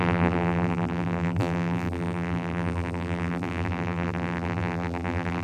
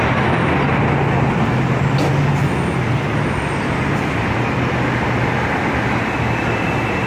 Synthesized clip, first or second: first